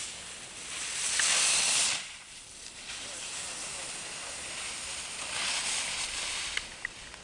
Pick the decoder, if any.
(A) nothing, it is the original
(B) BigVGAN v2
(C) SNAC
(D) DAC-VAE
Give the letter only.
A